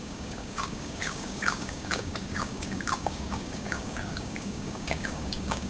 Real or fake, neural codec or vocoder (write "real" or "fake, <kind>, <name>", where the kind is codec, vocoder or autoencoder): fake, codec, DAC